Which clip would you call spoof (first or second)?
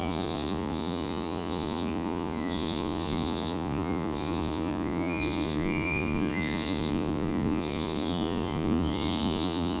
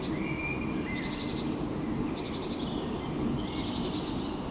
first